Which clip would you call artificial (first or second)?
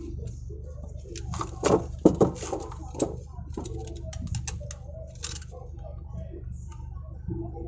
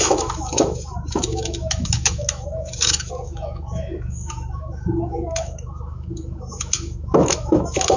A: second